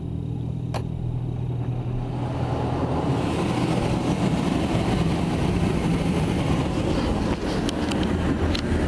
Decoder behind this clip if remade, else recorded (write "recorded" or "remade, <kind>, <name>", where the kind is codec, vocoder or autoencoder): recorded